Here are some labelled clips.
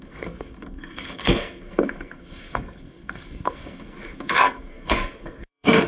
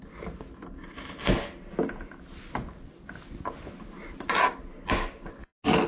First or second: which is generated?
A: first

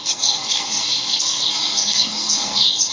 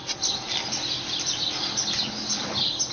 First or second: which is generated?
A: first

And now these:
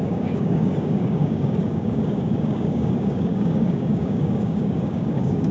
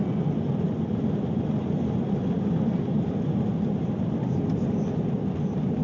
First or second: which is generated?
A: first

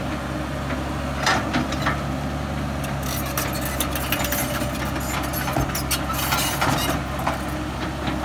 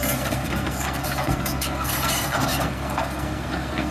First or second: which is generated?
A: second